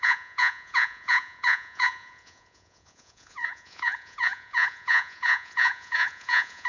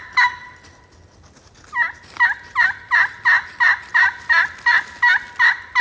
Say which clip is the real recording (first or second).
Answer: second